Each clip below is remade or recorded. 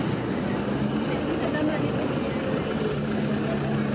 recorded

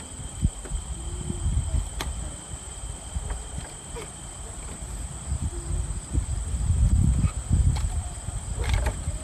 recorded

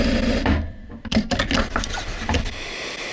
remade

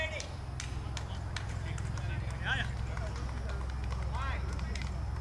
recorded